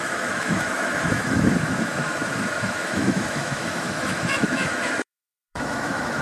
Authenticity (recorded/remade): remade